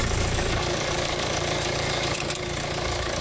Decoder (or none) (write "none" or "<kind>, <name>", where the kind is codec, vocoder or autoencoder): codec, DAC